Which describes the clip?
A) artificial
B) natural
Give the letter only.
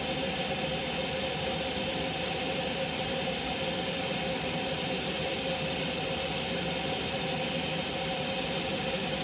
B